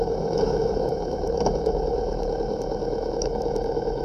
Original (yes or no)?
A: no